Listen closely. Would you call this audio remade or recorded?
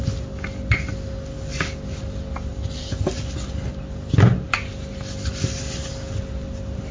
recorded